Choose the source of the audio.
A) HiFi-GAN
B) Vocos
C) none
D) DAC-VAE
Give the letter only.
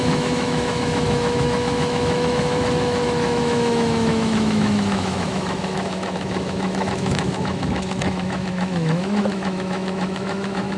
D